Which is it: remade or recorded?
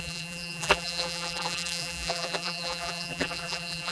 remade